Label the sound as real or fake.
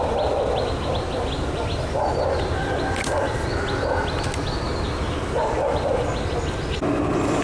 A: real